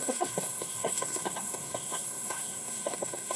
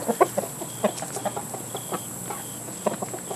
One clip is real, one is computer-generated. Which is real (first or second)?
second